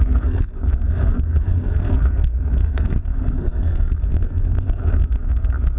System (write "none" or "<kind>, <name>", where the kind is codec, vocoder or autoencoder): codec, SNAC